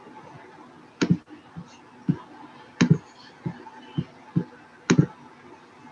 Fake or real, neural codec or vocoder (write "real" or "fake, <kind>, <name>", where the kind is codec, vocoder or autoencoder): real